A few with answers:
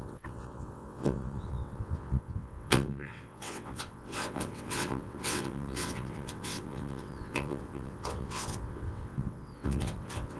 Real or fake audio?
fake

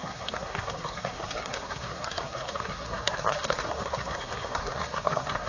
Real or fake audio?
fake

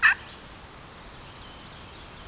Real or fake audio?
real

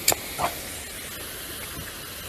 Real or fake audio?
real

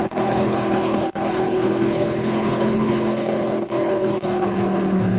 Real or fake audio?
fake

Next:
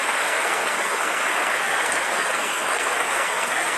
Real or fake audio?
fake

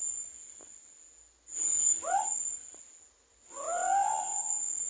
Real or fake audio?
real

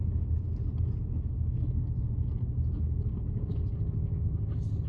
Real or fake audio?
real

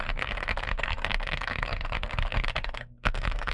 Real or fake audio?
fake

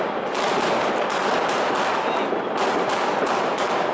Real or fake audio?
real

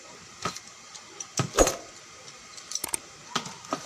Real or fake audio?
fake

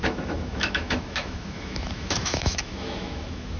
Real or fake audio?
fake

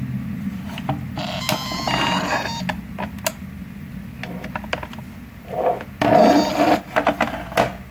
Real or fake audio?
real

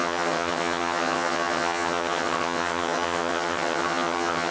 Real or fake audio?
fake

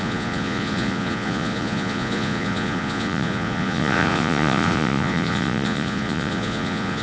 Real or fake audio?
fake